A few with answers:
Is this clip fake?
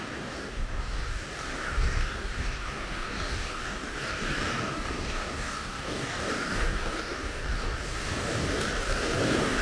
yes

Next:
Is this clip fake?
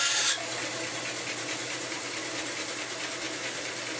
no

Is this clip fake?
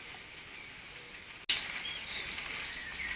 no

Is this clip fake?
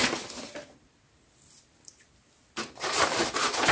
no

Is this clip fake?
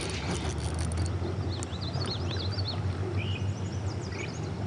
no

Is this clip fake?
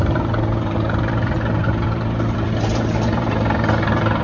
yes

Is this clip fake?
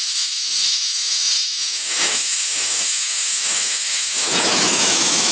yes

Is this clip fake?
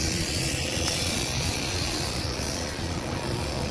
yes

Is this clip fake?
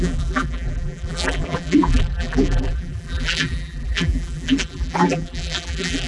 yes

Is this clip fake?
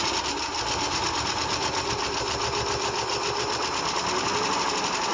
no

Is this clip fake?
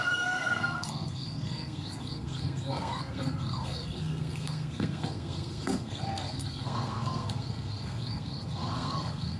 yes